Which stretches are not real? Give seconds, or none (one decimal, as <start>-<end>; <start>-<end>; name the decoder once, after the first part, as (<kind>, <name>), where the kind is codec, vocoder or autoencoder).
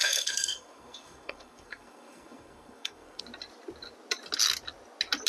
0.0-3.2 (codec, SNAC)